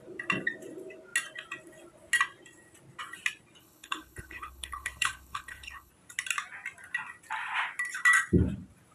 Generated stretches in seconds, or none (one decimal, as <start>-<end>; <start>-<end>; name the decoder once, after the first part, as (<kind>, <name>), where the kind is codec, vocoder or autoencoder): 3.6-5.9 (codec, HILCodec)